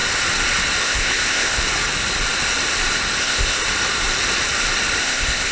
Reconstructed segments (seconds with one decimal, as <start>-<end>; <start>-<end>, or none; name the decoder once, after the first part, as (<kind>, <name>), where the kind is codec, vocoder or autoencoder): 0.8-1.6 (codec, ZipCodec); 3.2-3.6; 5.0-5.5